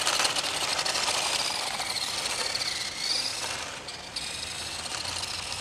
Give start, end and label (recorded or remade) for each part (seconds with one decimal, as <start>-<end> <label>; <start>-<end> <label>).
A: 0.0-5.6 recorded